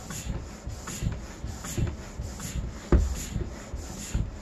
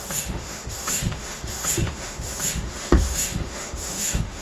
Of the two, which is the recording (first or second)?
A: first